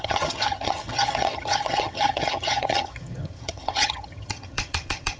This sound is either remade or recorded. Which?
remade